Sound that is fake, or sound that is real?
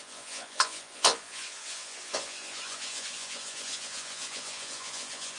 fake